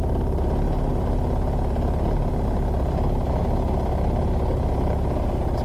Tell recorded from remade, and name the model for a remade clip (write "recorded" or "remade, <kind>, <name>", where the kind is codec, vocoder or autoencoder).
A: recorded